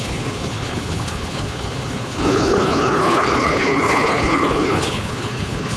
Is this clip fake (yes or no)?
yes